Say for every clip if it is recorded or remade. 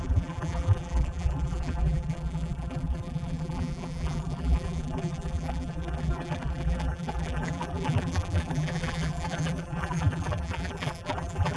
remade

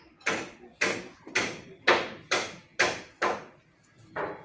recorded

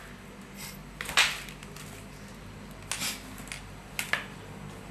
recorded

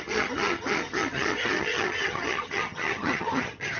remade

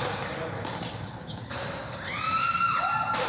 recorded